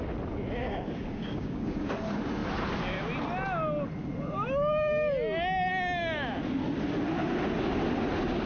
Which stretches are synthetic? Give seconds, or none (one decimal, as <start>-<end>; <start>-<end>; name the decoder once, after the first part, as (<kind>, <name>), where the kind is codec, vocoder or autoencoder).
0.6-1.9 (codec, DAC)